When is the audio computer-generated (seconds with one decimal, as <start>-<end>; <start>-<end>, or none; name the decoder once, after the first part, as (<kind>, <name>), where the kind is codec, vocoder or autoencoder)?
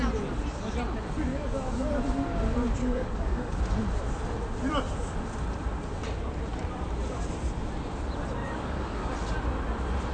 1.3-1.9 (codec, DAC); 2.8-3.6; 8.4-9.1